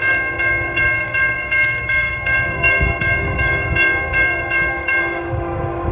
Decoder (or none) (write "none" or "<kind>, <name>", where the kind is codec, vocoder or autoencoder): codec, DAC